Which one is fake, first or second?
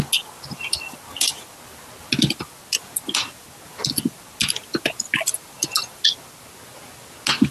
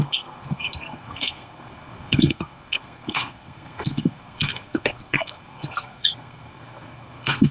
second